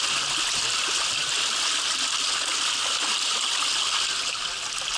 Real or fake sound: real